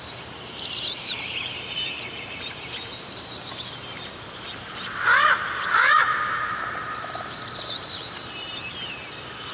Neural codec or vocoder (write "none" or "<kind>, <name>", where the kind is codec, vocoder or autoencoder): vocoder, BigVGAN v2